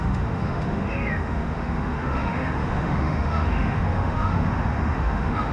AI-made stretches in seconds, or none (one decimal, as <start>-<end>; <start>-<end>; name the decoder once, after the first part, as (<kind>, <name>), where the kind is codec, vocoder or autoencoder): 0.0-5.5 (autoencoder, DAC-VAE)